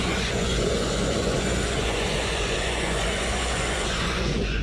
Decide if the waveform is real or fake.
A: fake